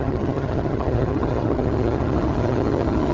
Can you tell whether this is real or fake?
fake